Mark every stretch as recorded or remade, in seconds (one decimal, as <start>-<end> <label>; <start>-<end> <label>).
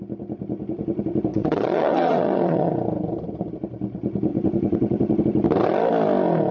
0.0-1.3 recorded; 1.3-2.7 remade; 2.7-4.3 recorded; 4.3-5.2 remade; 5.2-6.5 recorded